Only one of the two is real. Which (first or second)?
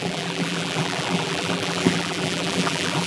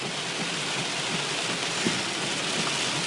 second